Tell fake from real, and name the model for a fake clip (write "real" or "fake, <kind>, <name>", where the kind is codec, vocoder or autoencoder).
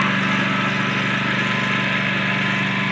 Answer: real